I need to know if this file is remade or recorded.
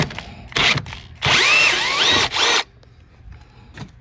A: recorded